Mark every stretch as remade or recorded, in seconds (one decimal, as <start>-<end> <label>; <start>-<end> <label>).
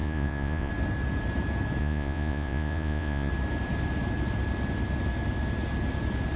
0.0-0.7 remade; 0.7-1.8 recorded; 1.8-3.3 remade; 3.3-6.4 recorded